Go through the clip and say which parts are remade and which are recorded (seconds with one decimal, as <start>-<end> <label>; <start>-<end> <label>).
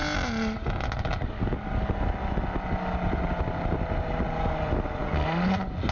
0.0-5.9 recorded